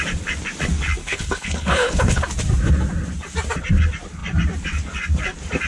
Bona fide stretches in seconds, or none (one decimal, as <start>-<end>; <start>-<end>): 0.0-1.0; 2.2-5.7